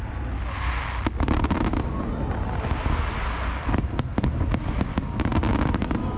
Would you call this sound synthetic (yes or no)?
no